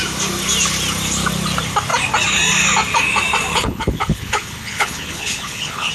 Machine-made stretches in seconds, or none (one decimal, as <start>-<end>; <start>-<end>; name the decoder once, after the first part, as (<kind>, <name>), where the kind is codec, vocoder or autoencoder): 3.5-5.9 (codec, HILCodec)